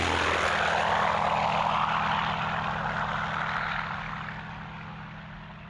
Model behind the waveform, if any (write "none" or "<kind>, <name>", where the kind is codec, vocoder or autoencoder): none